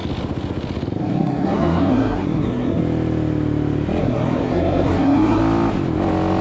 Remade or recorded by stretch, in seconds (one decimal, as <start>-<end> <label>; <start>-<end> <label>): 0.0-1.0 recorded; 1.0-2.8 remade; 2.8-4.0 recorded; 4.0-5.4 remade; 5.4-6.4 recorded